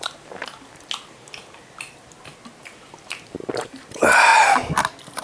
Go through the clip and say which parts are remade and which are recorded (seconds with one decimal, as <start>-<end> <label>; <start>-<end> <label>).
0.0-0.4 remade; 0.4-3.5 recorded; 3.5-4.3 remade; 4.3-5.2 recorded